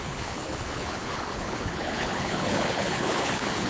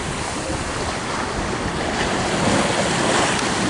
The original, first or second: second